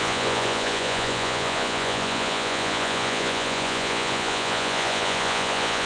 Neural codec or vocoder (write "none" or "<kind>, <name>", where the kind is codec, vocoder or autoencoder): vocoder, Vocos